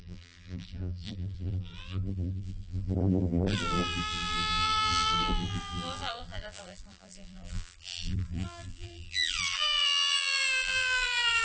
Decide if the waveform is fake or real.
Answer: fake